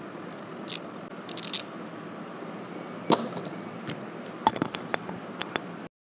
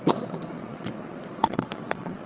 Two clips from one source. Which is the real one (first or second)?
first